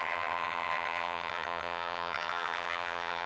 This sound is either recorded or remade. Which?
remade